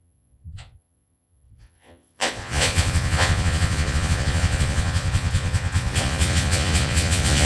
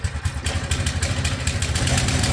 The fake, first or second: first